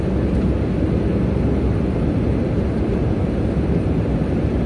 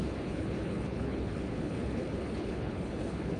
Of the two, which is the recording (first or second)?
first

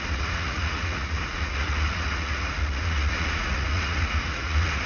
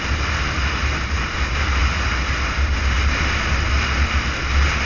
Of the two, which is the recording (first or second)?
second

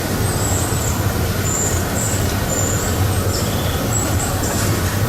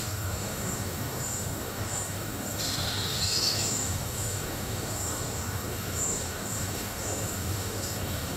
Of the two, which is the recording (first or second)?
first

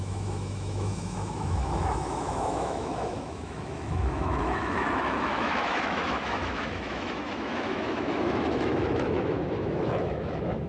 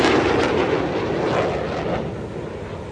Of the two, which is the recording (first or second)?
second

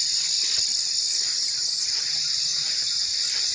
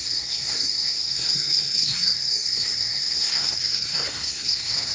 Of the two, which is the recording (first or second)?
first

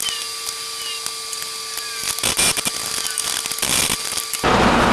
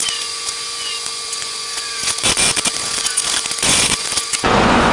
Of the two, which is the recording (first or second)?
first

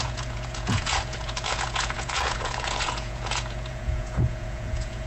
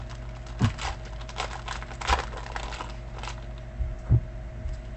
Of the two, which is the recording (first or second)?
second